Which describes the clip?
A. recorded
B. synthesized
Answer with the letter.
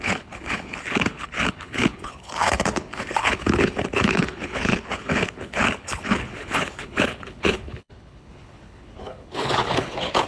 B